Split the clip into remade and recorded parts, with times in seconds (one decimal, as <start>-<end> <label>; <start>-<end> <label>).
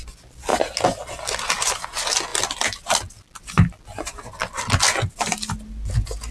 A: 0.0-6.3 recorded